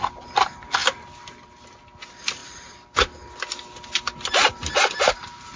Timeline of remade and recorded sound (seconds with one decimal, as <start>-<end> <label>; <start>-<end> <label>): 0.0-5.6 recorded